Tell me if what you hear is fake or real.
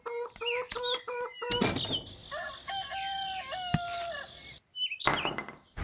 real